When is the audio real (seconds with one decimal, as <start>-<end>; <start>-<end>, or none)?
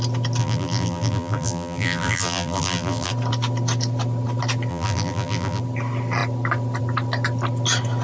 0.0-0.4; 3.1-4.7; 5.6-8.0